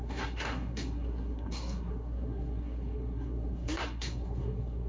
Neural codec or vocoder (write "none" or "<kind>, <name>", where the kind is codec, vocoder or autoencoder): codec, SNAC